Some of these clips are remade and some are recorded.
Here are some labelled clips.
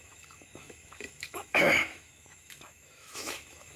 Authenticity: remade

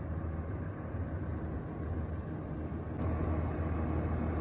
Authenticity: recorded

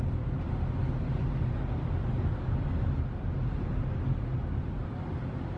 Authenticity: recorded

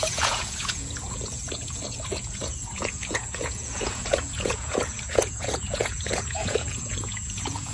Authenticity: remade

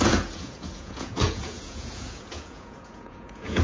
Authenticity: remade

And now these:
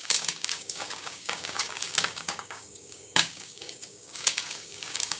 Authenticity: remade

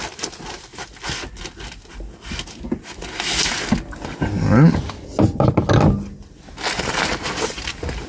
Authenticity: recorded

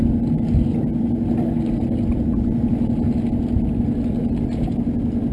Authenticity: recorded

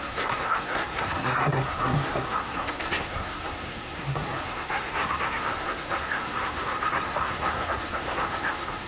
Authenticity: remade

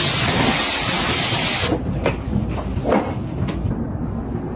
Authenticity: recorded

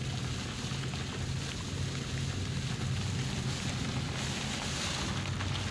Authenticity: recorded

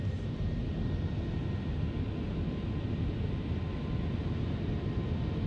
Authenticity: recorded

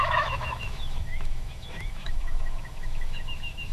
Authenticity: remade